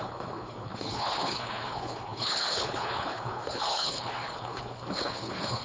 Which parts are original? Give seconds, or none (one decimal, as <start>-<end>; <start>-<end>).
none